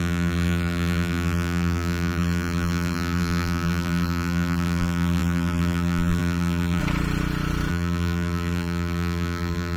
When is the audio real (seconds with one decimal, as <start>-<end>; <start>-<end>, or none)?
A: 6.8-7.7